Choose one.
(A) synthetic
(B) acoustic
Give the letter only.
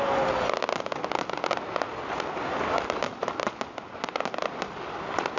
B